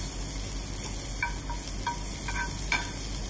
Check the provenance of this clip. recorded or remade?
recorded